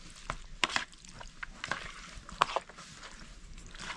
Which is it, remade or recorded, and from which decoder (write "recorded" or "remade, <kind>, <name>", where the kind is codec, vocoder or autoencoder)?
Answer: recorded